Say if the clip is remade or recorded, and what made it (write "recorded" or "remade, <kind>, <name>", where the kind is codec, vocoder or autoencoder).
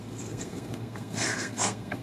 remade, codec, SNAC